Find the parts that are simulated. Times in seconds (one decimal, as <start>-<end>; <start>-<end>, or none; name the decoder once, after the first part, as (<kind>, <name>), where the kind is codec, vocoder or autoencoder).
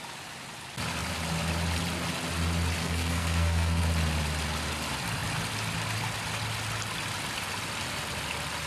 2.8-3.8 (codec, SNAC)